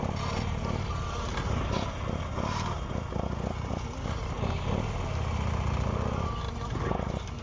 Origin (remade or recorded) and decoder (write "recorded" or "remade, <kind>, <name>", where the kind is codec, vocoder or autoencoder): recorded